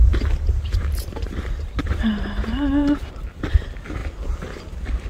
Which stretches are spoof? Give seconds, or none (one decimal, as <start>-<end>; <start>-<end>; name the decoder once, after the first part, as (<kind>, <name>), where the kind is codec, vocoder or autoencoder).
0.0-3.1 (vocoder, BigVGAN v2)

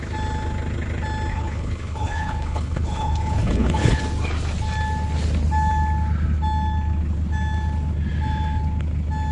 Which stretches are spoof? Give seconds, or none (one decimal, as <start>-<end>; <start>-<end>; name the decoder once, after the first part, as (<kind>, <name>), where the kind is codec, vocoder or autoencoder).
1.3-4.0 (codec, HILCodec)

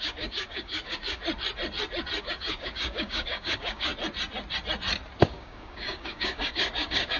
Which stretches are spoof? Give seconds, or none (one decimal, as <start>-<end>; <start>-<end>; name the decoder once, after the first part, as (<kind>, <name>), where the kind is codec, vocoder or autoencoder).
0.0-1.2 (codec, DAC); 2.2-3.9; 5.2-7.2

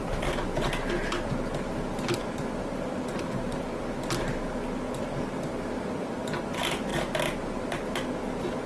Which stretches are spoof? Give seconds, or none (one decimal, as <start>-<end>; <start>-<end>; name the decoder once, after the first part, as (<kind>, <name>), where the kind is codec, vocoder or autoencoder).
none